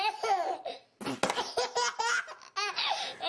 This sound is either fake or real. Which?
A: real